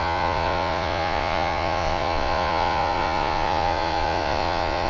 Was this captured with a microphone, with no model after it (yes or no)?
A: no